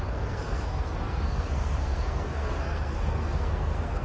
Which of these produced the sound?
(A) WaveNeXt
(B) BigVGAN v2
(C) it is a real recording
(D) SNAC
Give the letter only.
D